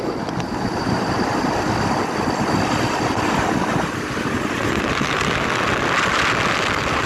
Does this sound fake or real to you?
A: real